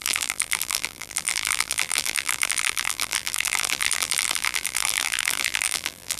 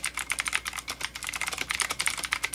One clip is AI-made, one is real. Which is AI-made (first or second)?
first